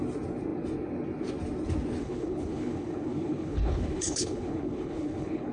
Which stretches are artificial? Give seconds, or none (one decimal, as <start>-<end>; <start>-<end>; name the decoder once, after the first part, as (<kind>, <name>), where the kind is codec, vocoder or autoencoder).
2.0-5.5 (codec, HILCodec)